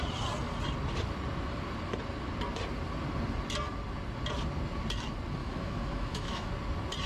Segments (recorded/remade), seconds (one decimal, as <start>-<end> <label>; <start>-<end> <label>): 0.0-5.4 recorded; 5.4-6.5 remade; 6.5-7.1 recorded